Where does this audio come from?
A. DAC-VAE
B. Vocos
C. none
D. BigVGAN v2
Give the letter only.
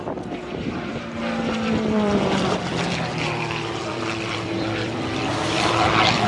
D